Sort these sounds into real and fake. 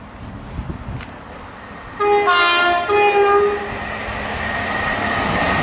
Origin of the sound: real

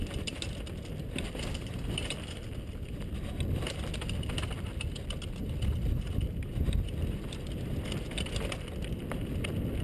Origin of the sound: real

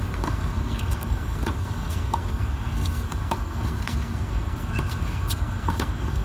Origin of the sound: fake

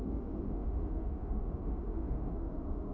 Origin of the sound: fake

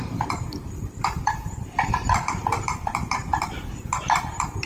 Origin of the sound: fake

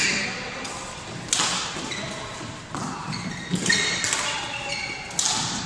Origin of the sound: real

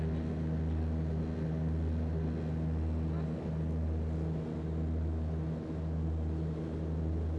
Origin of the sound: real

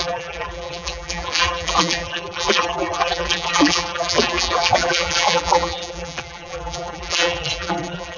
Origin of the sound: fake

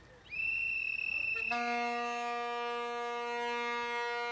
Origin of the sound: real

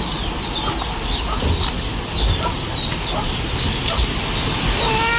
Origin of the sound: real